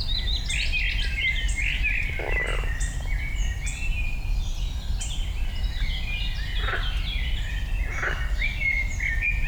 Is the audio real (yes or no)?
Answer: yes